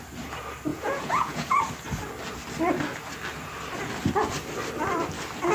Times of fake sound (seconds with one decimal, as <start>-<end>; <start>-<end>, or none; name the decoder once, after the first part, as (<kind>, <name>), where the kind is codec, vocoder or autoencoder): 0.7-1.6 (vocoder, Vocos)